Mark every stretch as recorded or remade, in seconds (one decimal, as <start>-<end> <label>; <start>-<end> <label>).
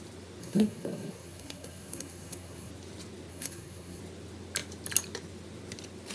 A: 0.0-0.4 recorded; 0.4-2.7 remade; 2.7-3.3 recorded; 3.3-4.0 remade; 4.0-6.1 recorded